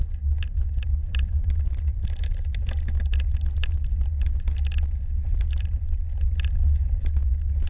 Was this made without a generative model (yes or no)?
yes